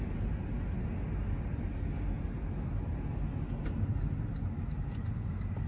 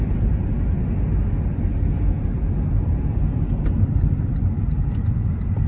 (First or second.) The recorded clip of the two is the first